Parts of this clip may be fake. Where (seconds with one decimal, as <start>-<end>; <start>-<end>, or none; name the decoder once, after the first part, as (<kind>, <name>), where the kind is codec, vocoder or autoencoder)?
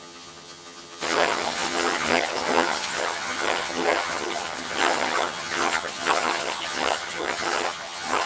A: 0.0-8.3 (vocoder, HiFi-GAN)